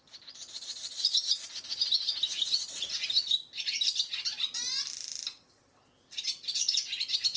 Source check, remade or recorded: recorded